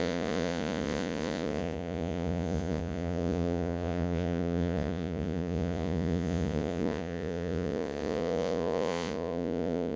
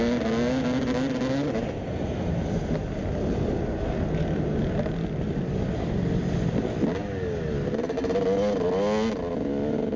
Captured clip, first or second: second